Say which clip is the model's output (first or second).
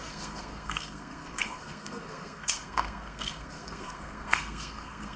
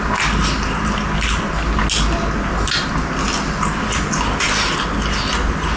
first